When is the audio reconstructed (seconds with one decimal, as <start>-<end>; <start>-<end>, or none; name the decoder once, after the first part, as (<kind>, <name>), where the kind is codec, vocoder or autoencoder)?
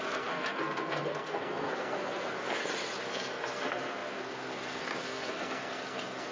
0.0-2.6 (codec, SNAC); 3.1-6.3